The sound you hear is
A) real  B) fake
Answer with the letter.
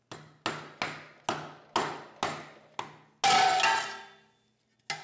A